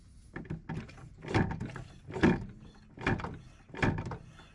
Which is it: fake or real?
real